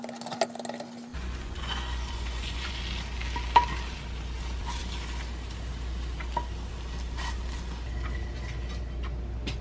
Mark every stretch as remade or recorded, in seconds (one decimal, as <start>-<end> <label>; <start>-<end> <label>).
0.0-1.1 recorded; 1.1-2.8 remade; 2.8-9.6 recorded